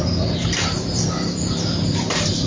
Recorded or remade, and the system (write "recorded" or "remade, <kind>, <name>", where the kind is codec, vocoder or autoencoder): remade, vocoder, BigVGAN v2